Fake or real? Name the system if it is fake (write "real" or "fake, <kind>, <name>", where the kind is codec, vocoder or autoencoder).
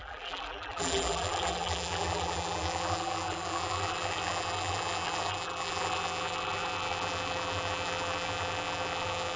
fake, vocoder, BigVGAN v2